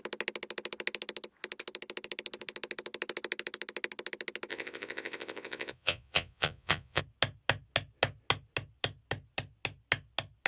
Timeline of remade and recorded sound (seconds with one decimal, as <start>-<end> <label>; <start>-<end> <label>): 0.0-4.5 recorded; 4.5-7.0 remade; 7.0-10.5 recorded